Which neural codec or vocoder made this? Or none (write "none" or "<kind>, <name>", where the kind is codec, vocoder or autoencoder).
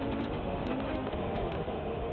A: autoencoder, DAC-VAE